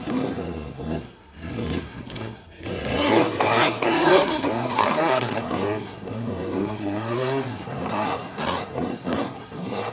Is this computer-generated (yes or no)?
yes